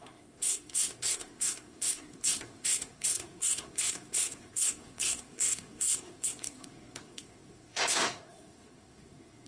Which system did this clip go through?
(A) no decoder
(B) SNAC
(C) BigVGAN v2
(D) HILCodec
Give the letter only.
B